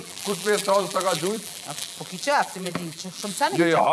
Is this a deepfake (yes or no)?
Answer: yes